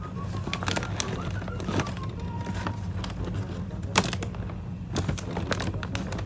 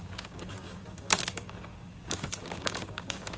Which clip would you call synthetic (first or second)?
second